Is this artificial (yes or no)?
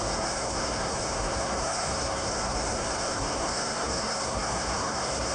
yes